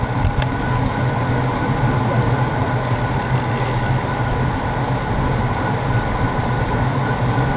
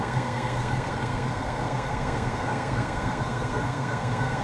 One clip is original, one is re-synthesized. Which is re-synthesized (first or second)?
second